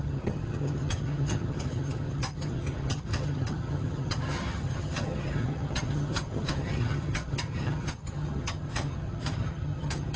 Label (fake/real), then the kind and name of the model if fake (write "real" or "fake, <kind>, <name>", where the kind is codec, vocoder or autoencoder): fake, vocoder, HiFi-GAN